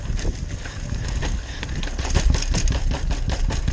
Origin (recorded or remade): recorded